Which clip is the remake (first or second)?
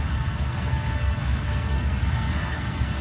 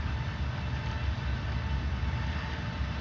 first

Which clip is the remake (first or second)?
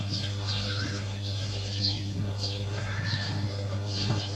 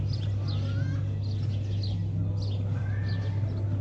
first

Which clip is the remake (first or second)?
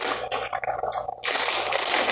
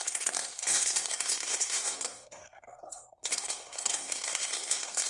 second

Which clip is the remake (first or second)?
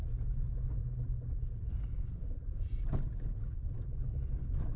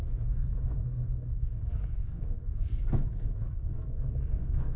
second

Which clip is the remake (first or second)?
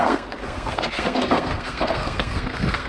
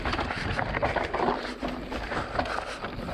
first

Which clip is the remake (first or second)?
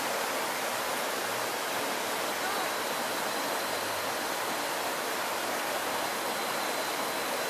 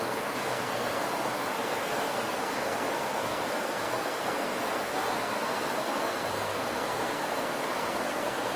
second